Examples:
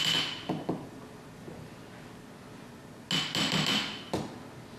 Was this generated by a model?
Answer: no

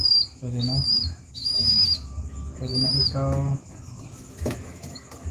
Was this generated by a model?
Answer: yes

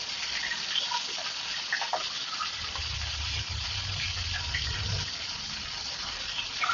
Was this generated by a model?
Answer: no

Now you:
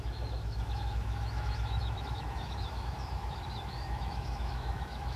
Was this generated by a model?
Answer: yes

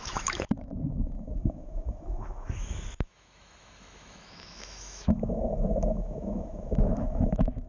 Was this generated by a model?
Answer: yes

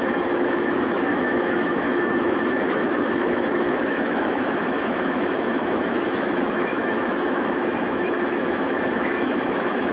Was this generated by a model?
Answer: yes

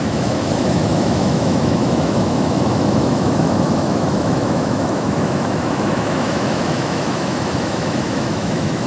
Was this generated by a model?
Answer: yes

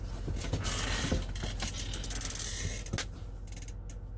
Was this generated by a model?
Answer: no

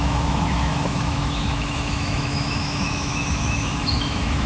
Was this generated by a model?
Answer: yes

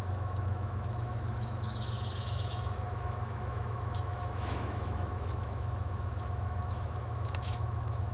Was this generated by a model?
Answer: yes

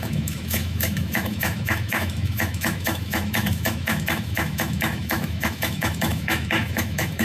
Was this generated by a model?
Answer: yes